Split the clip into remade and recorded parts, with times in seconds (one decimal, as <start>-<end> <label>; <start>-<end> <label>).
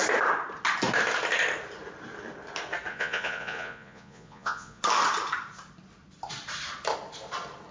0.0-2.9 recorded; 2.9-4.8 remade; 4.8-7.7 recorded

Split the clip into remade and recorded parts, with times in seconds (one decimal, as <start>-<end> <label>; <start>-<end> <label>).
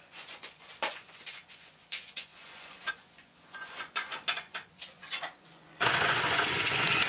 0.0-7.1 remade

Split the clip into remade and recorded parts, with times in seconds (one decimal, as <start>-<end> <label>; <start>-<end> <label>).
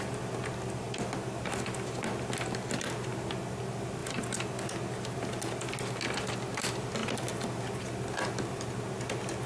0.0-9.5 recorded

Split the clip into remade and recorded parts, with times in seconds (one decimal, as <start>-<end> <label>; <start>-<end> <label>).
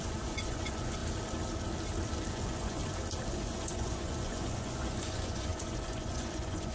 0.0-1.0 remade; 1.0-2.3 recorded; 2.3-2.8 remade; 2.8-3.3 recorded; 3.3-6.7 remade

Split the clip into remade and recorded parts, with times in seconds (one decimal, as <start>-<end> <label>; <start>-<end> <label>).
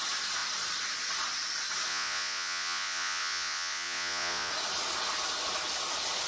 0.0-1.9 recorded; 1.9-4.5 remade; 4.5-6.3 recorded